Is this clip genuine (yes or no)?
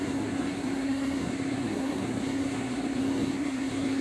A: no